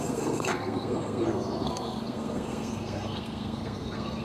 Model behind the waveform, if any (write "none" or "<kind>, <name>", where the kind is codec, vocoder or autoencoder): codec, SNAC